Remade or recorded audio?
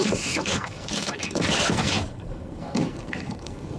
remade